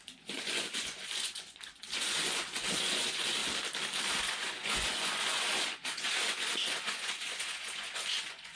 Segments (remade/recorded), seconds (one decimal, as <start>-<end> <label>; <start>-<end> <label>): 0.0-3.4 remade; 3.4-4.2 recorded; 4.2-8.6 remade